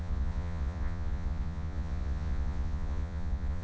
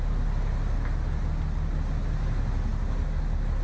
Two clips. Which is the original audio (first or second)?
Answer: second